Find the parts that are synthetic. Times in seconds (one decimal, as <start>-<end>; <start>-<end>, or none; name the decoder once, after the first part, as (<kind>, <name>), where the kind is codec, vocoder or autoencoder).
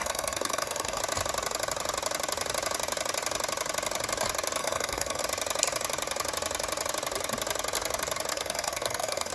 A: 0.0-1.0 (codec, SNAC); 4.6-5.2; 8.3-9.3